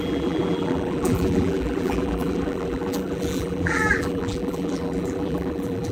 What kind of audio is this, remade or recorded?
remade